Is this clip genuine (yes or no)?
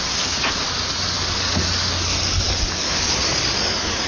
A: yes